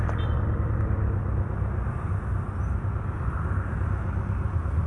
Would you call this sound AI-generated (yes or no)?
no